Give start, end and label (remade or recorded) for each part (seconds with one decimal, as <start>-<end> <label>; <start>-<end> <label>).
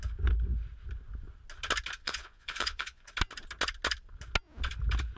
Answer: 0.0-2.0 recorded; 2.0-3.1 remade; 3.1-5.2 recorded